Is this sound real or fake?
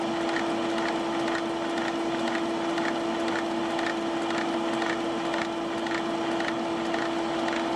real